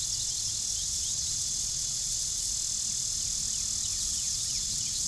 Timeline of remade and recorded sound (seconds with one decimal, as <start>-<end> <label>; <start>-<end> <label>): 0.0-0.8 recorded; 0.8-2.5 remade; 2.5-3.9 recorded; 3.9-5.1 remade